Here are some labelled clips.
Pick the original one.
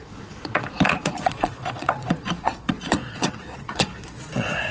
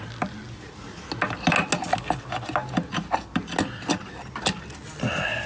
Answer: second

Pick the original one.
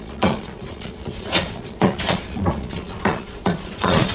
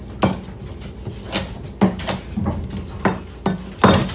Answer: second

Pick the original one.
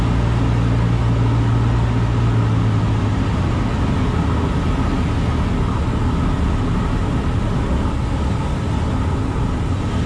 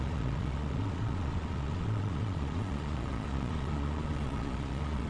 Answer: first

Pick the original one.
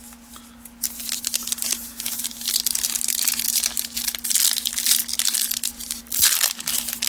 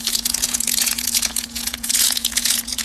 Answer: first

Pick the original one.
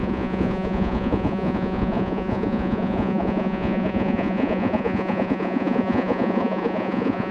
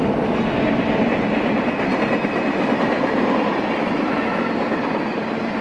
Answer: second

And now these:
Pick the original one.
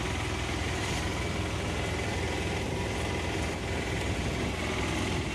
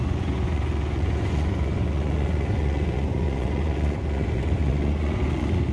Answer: first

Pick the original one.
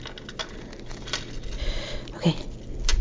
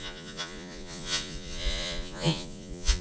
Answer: first